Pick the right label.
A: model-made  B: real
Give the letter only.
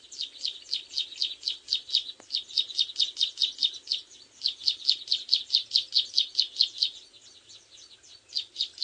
B